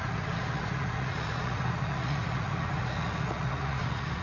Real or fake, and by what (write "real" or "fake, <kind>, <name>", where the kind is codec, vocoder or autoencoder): fake, vocoder, Vocos